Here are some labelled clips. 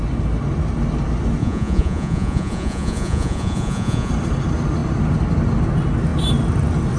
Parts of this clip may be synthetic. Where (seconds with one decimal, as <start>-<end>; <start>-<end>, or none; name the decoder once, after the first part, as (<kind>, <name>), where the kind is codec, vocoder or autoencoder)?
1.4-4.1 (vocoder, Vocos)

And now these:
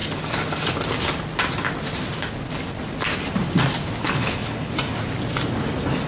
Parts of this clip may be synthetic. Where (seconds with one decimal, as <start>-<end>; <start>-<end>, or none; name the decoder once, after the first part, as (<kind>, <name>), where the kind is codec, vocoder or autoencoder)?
4.0-4.7 (codec, HILCodec)

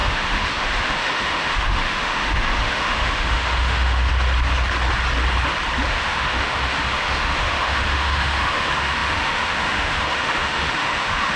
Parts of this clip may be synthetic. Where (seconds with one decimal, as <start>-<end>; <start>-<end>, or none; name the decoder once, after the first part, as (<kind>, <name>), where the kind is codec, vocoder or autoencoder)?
0.0-4.1 (autoencoder, DAC-VAE); 5.9-11.4

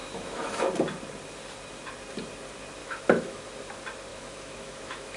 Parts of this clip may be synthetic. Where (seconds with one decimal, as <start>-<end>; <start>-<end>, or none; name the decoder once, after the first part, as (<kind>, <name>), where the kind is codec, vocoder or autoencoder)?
0.0-0.6 (autoencoder, DAC-VAE); 2.8-3.4; 4.1-5.2

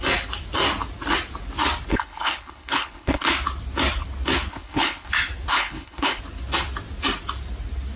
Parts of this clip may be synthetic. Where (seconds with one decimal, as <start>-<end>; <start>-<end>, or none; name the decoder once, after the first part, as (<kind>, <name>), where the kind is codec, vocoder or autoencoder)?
1.9-3.3 (codec, HILCodec); 4.5-5.1; 5.5-6.2

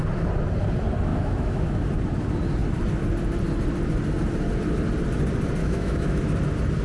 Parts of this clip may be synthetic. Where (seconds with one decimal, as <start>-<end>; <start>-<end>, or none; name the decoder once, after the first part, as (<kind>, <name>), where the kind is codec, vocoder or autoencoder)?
1.1-1.8 (autoencoder, DAC-VAE); 5.6-6.2